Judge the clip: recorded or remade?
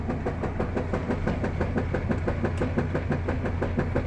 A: recorded